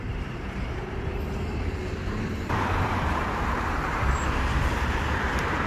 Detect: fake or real fake